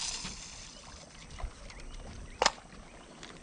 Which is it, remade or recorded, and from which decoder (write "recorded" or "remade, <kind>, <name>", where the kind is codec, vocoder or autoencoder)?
recorded